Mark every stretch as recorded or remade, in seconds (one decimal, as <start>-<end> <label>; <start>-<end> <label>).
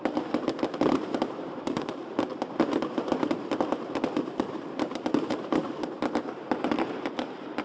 0.0-2.3 remade; 2.3-3.8 recorded; 3.8-7.6 remade